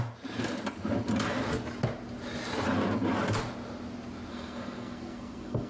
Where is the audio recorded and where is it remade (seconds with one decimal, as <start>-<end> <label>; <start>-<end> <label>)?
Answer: 0.0-4.3 recorded; 4.3-5.7 remade